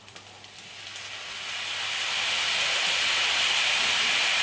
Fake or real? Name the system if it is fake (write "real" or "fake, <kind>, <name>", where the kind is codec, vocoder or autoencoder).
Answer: real